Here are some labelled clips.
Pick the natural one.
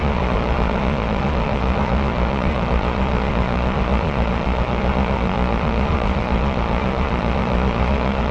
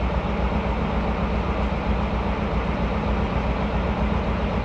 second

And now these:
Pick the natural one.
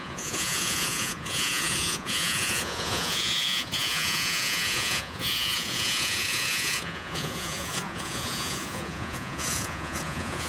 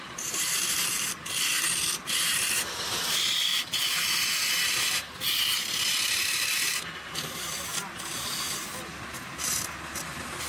second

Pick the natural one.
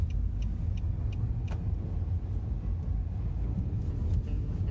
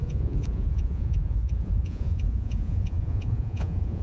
first